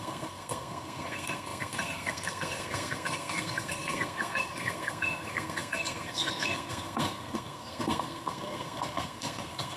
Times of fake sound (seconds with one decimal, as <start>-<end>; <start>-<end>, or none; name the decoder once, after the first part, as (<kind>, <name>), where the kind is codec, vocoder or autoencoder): 0.0-9.8 (codec, SNAC)